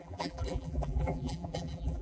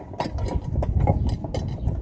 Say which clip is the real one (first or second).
second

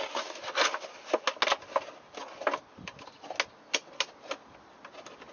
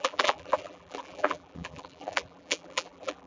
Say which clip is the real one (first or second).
first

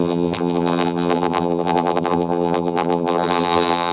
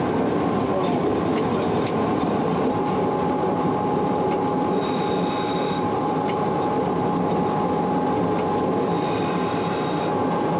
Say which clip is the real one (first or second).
second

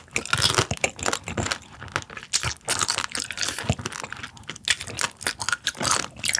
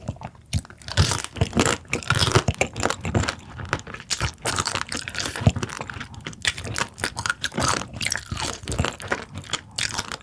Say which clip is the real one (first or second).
first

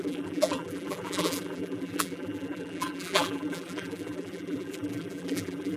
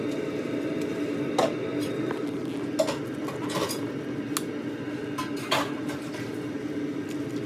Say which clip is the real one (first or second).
second